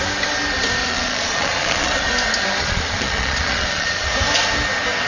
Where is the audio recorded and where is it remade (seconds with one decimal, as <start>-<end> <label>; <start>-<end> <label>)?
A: 0.0-0.8 recorded; 0.8-2.1 remade; 2.1-2.6 recorded; 2.6-4.1 remade; 4.1-5.1 recorded